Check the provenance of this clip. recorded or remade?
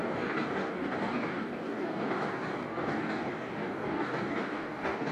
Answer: remade